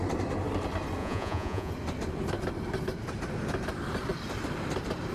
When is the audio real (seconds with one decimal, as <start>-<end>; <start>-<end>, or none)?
0.0-1.0; 1.7-5.1